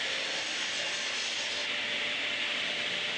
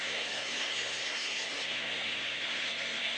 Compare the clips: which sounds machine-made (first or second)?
second